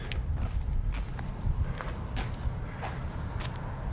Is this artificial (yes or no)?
no